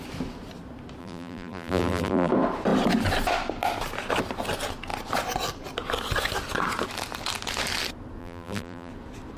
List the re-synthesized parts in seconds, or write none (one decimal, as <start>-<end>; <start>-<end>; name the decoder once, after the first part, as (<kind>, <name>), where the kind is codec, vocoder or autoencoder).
1.0-2.3 (vocoder, BigVGAN v2); 8.2-8.9